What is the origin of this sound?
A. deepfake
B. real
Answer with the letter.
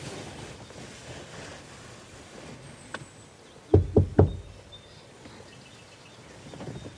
B